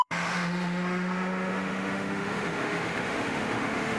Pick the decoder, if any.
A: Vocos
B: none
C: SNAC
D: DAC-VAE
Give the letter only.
D